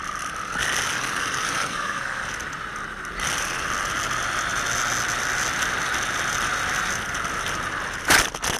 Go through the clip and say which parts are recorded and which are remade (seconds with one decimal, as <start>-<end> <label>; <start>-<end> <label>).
0.0-1.0 recorded; 1.0-2.3 remade; 2.3-8.6 recorded